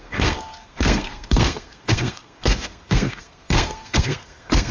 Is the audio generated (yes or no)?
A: yes